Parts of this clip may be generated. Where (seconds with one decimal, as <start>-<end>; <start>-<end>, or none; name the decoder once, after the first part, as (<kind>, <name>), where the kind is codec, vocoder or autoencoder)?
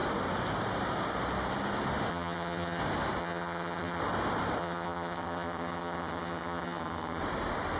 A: 2.1-2.8 (vocoder, HiFi-GAN); 3.2-4.0; 4.6-7.2